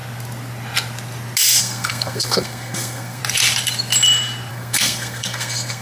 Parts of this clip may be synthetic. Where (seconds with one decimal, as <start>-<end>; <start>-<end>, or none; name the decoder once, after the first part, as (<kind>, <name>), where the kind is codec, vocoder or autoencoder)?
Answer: 1.6-3.2 (codec, SNAC); 4.5-5.8